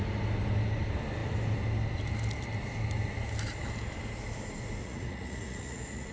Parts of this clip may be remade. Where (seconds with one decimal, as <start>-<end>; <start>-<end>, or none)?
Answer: 4.8-6.1